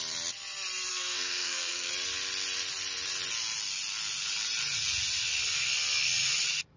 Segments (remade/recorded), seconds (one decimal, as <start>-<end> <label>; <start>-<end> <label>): 0.0-0.9 recorded; 0.9-1.9 remade; 1.9-6.8 recorded